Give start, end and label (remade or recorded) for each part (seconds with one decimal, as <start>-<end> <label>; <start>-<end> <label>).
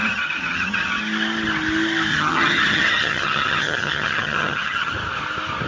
0.0-1.0 remade; 1.0-2.1 recorded; 2.1-4.9 remade; 4.9-5.7 recorded